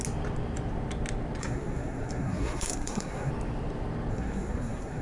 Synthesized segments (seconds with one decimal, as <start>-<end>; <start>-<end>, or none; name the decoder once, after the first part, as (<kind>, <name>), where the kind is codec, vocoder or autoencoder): 1.4-3.3 (codec, SNAC); 4.1-5.0